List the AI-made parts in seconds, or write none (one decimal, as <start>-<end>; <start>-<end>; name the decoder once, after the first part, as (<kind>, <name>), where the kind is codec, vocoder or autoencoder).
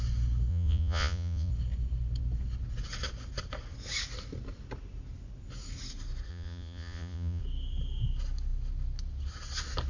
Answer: 0.5-1.5 (vocoder, Vocos); 6.3-7.4